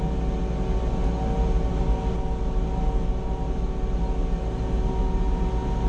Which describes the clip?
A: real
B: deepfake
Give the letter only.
A